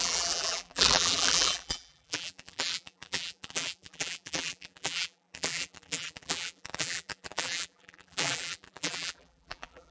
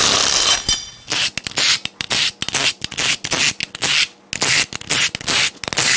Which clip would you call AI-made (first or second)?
first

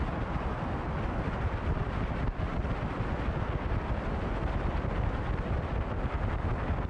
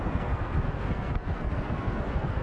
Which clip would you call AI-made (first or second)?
second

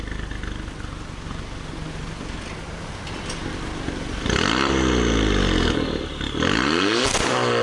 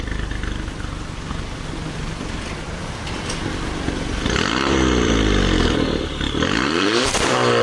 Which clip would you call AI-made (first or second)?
second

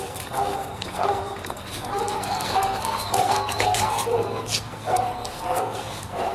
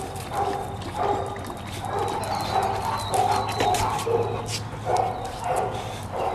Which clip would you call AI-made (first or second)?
first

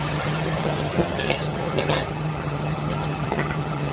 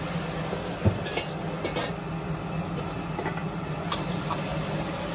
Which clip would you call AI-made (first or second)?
first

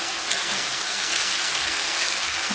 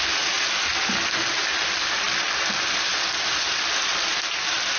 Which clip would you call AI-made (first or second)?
first